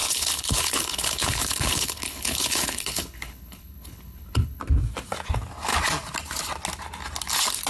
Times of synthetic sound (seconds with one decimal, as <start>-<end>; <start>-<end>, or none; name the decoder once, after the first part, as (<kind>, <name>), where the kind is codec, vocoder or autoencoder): 0.0-4.6 (codec, HILCodec)